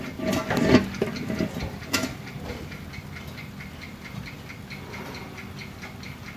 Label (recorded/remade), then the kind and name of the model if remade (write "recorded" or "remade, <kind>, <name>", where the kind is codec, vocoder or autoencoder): recorded